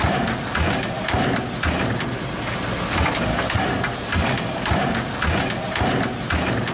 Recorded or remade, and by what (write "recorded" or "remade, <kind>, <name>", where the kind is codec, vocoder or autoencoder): recorded